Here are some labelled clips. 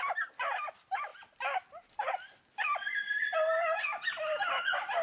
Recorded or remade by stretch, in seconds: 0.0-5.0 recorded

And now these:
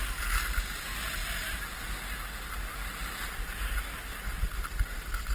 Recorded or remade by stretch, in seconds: 0.0-5.3 recorded

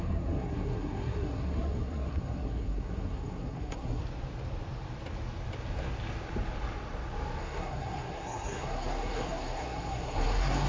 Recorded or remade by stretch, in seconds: 0.0-4.0 remade; 4.0-7.4 recorded; 7.4-10.7 remade

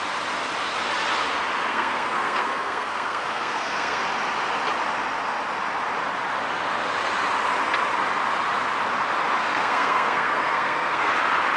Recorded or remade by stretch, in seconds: 0.0-1.7 recorded; 1.7-4.0 remade; 4.0-9.4 recorded; 9.4-11.1 remade; 11.1-11.6 recorded

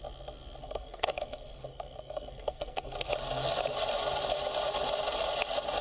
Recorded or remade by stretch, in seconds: 0.0-0.6 recorded; 0.6-3.1 remade; 3.1-5.8 recorded